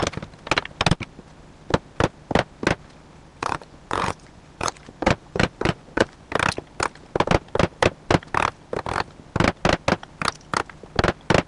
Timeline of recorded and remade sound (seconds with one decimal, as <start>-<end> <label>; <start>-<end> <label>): 0.0-3.3 recorded; 3.3-6.3 remade; 6.3-11.5 recorded